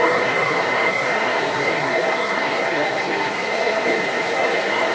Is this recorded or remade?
remade